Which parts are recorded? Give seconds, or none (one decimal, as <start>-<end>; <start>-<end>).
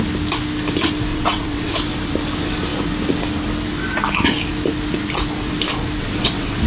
0.0-1.1; 1.7-6.0